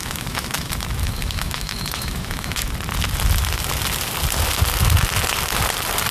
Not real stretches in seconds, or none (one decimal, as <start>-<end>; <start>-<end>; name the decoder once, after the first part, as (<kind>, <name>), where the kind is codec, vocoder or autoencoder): 0.0-2.7 (autoencoder, DAC-VAE)